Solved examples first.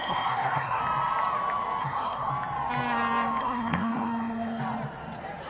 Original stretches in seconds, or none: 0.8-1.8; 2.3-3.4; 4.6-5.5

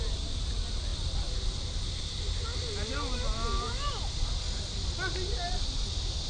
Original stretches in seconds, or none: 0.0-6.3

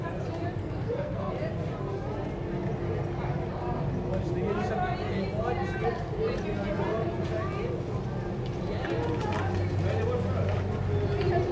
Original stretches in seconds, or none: 0.0-0.6; 1.3-11.5

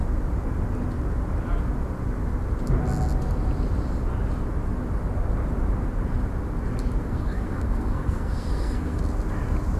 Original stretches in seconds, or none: 0.0-7.0; 9.0-9.8

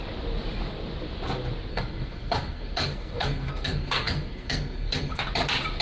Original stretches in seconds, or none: 0.0-1.7; 5.2-5.8